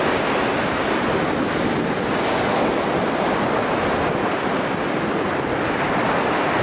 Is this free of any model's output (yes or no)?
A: yes